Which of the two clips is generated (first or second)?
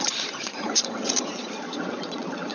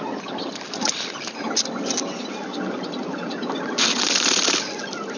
first